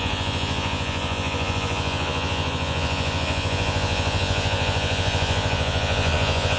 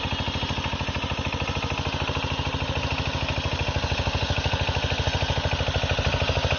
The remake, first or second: first